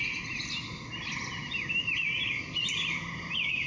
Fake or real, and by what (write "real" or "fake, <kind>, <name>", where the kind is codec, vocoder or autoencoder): real